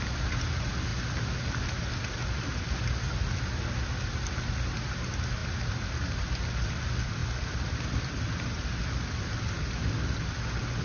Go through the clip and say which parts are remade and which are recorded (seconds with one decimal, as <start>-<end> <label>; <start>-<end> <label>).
0.0-10.8 recorded